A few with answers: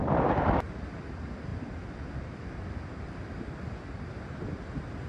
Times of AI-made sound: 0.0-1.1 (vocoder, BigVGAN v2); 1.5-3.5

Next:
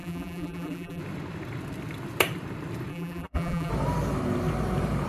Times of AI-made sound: 0.0-1.0 (vocoder, BigVGAN v2); 2.9-3.7

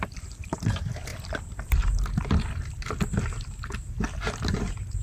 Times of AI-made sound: none

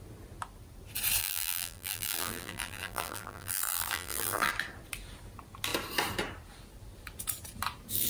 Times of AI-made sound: 1.2-4.5 (vocoder, BigVGAN v2)